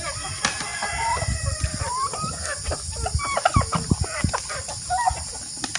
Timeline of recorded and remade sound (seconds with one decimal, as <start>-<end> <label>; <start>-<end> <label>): 0.0-5.8 recorded